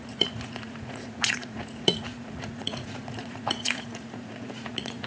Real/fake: fake